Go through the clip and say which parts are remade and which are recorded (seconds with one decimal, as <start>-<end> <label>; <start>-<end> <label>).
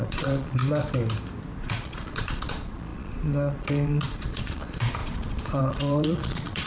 0.0-0.6 remade; 0.6-1.6 recorded; 1.6-6.7 remade